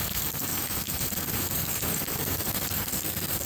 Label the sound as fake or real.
fake